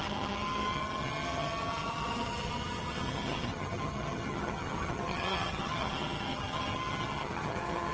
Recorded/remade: remade